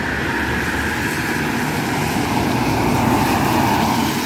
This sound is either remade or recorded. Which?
recorded